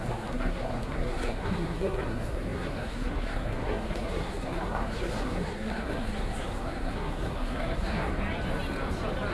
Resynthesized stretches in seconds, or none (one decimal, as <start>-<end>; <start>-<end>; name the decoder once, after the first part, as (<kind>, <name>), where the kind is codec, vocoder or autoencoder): 0.0-8.1 (codec, SNAC)